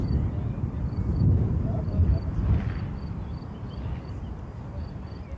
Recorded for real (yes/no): no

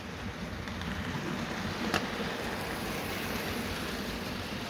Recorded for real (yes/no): no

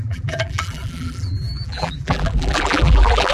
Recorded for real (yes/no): no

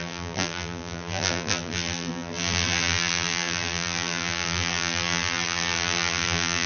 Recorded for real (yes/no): no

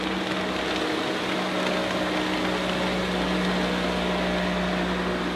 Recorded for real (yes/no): yes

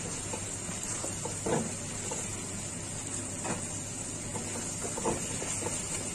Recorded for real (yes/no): yes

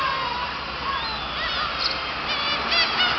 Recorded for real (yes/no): yes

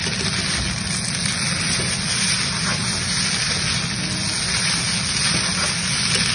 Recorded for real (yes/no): yes